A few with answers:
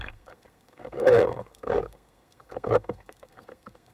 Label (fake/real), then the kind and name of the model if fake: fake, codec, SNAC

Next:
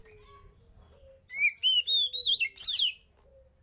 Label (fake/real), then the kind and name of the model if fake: real